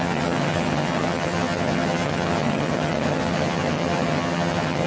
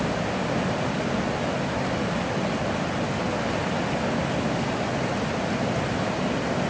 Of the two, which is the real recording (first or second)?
second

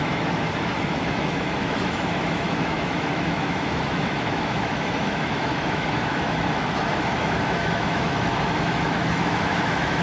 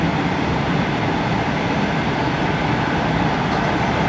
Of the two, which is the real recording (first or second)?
second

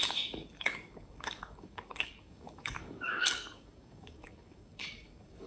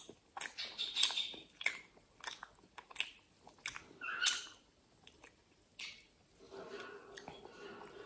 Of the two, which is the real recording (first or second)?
second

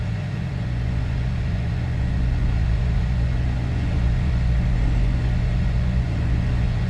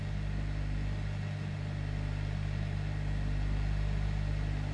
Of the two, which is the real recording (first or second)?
second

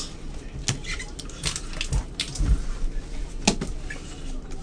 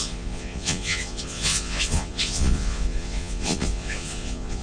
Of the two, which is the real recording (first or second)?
first